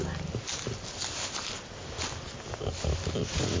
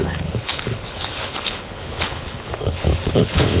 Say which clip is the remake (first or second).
second